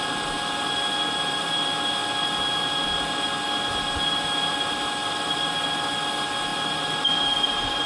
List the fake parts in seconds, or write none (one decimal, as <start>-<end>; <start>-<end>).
6.5-7.9